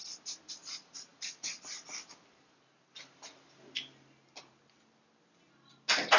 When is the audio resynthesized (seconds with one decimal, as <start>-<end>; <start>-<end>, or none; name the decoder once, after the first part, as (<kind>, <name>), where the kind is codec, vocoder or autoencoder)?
none